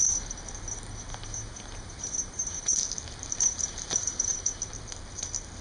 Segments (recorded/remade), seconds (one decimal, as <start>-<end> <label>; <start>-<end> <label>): 0.0-1.2 recorded; 1.2-4.6 remade; 4.6-5.6 recorded